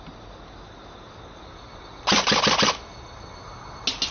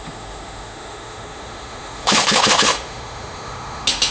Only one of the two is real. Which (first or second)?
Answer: first